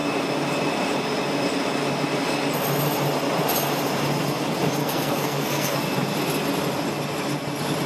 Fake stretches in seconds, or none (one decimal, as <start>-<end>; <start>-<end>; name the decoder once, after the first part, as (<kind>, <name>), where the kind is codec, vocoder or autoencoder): 4.8-5.8 (codec, SNAC)